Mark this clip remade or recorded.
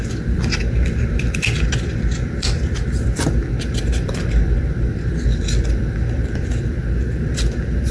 remade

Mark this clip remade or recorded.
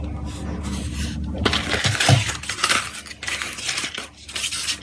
recorded